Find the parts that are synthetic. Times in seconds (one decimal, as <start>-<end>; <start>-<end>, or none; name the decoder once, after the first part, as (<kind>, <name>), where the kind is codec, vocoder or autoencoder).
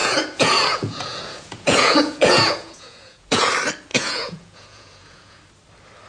0.0-3.5 (vocoder, Vocos); 3.9-5.4